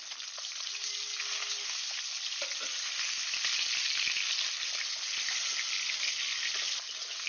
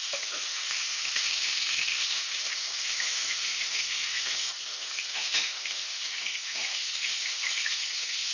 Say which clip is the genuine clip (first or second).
first